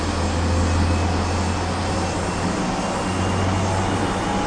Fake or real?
real